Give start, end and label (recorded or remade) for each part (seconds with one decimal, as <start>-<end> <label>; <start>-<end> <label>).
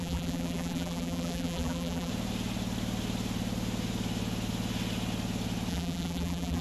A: 0.0-2.1 remade; 2.1-5.7 recorded; 5.7-6.6 remade